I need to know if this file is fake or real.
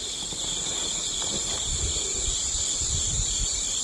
fake